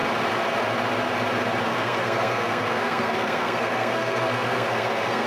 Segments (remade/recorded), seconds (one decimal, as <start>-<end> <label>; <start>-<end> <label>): 0.0-1.7 recorded; 1.7-5.3 remade